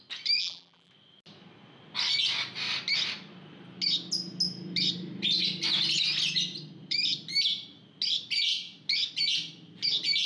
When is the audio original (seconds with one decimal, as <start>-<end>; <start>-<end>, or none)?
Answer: 0.0-0.4; 0.9-10.3